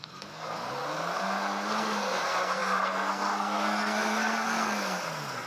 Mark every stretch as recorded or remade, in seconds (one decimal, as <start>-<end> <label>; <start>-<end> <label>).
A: 0.0-5.5 remade